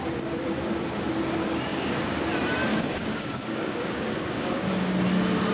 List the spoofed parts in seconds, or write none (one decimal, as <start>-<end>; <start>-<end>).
1.7-2.2; 2.7-4.7